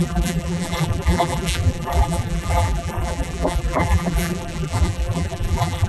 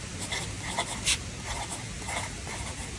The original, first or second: second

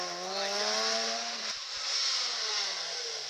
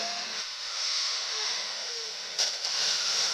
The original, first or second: first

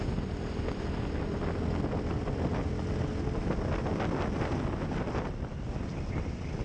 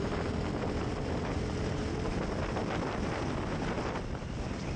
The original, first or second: first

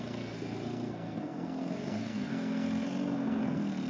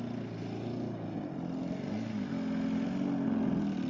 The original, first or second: second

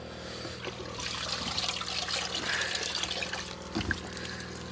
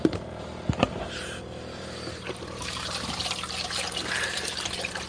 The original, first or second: first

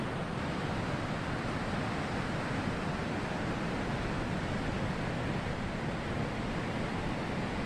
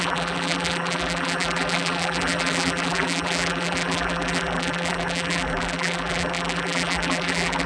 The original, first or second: first